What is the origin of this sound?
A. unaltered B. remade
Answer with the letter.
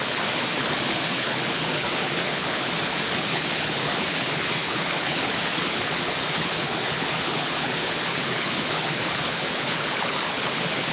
B